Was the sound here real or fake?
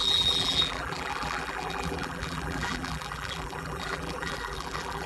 fake